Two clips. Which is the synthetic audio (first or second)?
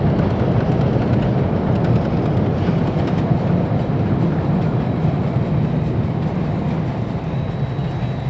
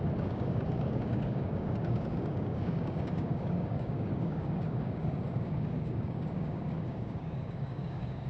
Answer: second